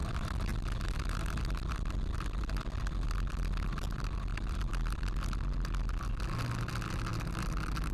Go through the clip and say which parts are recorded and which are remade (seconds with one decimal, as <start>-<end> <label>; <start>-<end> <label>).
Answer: 0.0-7.9 recorded

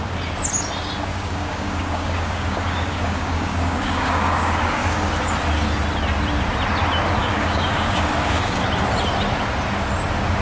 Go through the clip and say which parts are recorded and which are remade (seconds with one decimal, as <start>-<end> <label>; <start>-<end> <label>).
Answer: 0.0-1.1 recorded; 1.1-5.1 remade; 5.1-7.2 recorded; 7.2-8.6 remade; 8.6-10.4 recorded